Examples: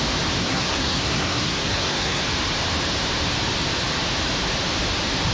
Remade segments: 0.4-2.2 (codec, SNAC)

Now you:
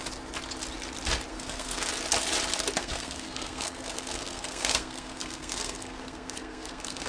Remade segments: 1.3-1.9 (codec, SNAC); 2.8-7.1

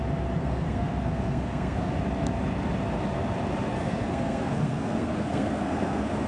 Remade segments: 0.4-1.9 (codec, SNAC); 3.8-6.3

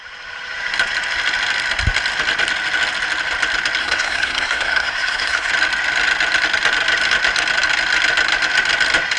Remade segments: 3.8-5.5 (codec, SNAC)